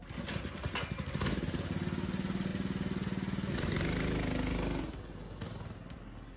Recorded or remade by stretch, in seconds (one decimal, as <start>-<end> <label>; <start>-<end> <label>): 0.0-6.4 recorded